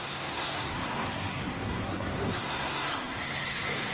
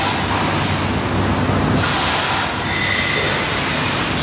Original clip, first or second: second